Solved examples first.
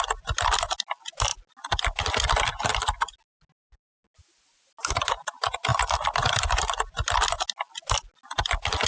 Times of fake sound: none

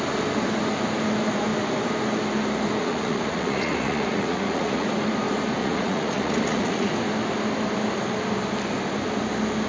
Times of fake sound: 2.8-4.9 (vocoder, Vocos); 5.6-6.9

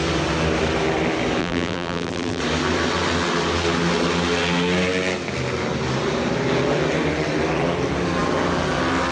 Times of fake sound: 1.4-2.4 (vocoder, BigVGAN v2)